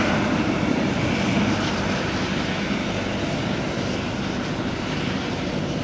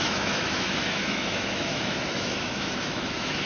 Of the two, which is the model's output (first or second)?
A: second